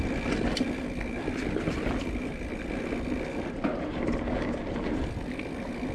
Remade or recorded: recorded